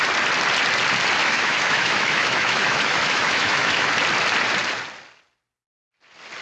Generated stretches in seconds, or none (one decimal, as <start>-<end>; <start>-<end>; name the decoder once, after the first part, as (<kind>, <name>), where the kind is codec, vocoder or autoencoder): 1.2-3.9 (autoencoder, DAC-VAE)

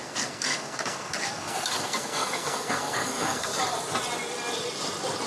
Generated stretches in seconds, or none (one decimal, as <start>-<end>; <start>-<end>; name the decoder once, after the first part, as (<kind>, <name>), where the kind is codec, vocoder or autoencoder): 0.0-3.5 (codec, SNAC)